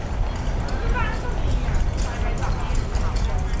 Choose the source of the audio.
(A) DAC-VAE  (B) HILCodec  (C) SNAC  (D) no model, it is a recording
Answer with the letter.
D